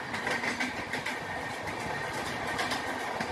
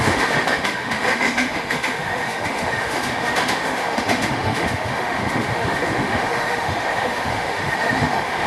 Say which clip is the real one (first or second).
first